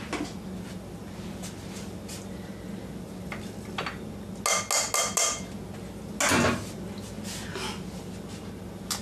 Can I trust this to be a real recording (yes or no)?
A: yes